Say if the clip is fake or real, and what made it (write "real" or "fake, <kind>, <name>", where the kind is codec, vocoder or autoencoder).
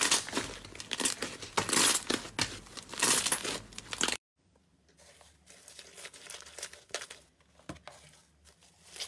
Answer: real